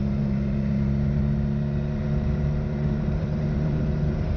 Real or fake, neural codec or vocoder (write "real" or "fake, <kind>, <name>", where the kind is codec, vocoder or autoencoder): real